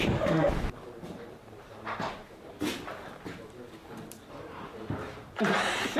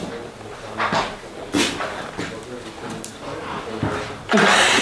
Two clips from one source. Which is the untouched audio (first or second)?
second